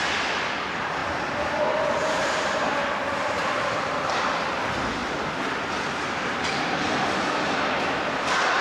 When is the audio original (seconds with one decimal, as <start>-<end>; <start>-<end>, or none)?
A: 5.0-8.6